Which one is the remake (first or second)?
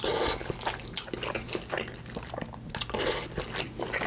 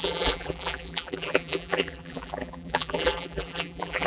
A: second